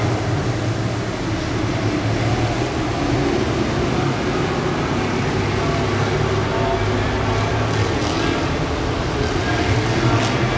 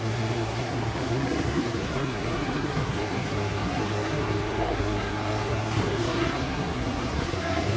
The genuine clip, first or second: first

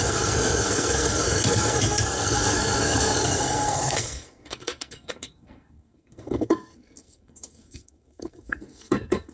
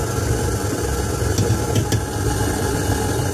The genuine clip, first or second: second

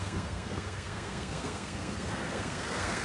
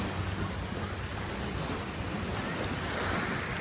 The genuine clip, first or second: second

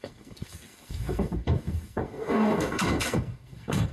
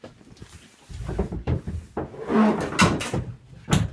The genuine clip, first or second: second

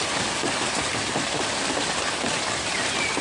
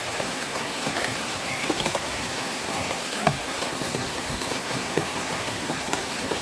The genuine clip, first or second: first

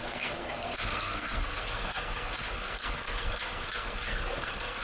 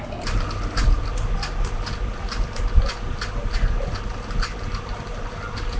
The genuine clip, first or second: second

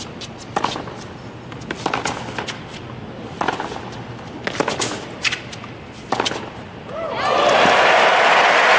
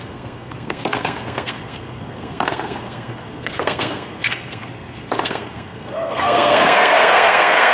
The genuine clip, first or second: first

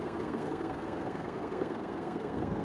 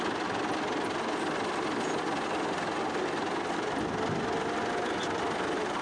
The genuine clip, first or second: second